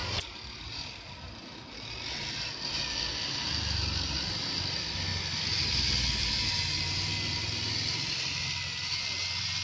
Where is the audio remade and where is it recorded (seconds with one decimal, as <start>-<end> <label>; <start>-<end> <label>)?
0.0-9.6 recorded